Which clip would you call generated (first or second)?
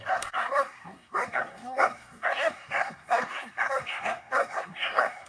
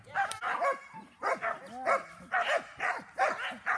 first